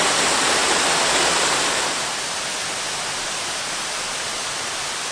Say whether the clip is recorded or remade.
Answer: recorded